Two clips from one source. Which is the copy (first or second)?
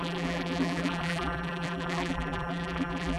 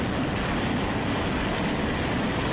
first